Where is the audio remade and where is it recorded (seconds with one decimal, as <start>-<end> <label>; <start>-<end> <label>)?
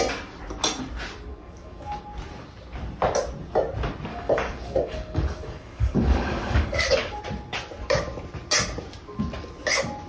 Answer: 0.0-1.3 recorded; 1.3-2.0 remade; 2.0-4.1 recorded; 4.1-7.2 remade; 7.2-10.1 recorded